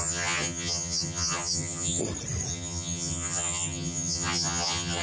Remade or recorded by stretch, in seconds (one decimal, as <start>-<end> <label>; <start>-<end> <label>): 0.0-2.0 remade; 2.0-2.5 recorded; 2.5-5.0 remade